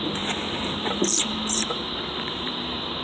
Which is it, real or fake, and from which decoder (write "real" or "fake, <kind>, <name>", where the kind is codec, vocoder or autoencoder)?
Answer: fake, vocoder, BigVGAN v2